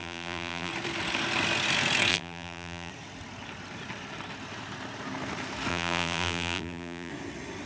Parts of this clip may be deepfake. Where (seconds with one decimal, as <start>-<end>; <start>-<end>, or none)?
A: 0.0-0.7; 2.1-2.9; 5.7-7.1